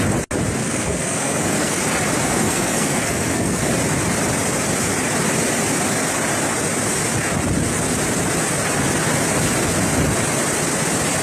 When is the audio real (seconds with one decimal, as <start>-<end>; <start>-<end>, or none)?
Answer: 0.0-0.6; 1.8-2.2; 3.7-11.2